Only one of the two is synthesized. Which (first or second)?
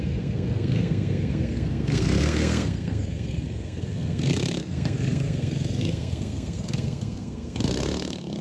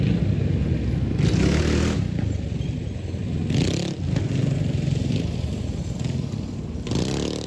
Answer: first